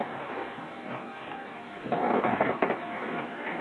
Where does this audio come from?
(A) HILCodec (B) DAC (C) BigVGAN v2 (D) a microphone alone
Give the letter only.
B